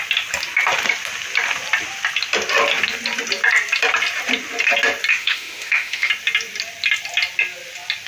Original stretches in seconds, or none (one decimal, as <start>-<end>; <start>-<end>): 0.0-5.1; 6.1-8.1